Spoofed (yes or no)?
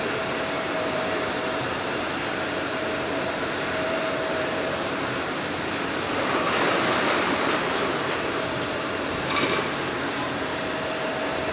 yes